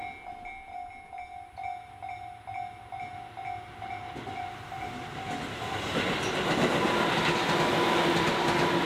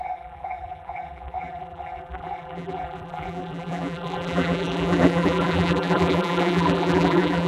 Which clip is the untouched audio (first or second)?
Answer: first